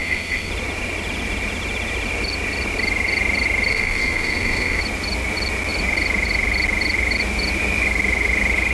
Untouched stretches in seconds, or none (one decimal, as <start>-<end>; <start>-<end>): 0.5-3.7; 4.8-8.7